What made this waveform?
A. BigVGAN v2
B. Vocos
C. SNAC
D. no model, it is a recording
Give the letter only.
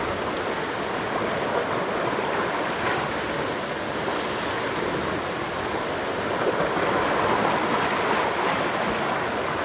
D